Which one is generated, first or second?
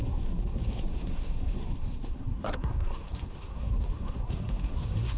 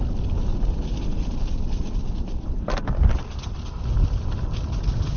first